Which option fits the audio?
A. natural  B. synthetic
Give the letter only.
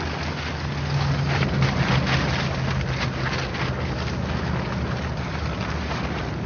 A